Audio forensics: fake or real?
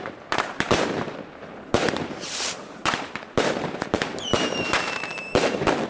fake